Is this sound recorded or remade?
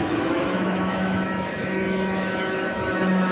remade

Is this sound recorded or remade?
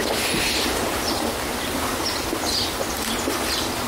recorded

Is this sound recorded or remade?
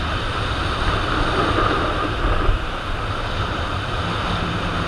recorded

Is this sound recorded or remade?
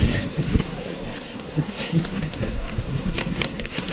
remade